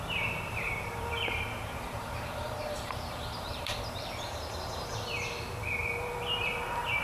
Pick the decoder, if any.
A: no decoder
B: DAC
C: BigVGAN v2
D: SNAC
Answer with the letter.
C